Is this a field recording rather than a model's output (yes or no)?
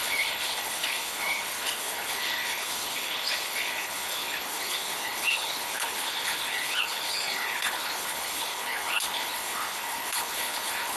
no